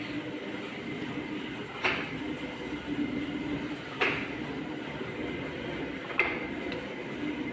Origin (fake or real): real